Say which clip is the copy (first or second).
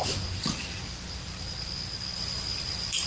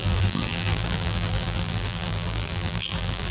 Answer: second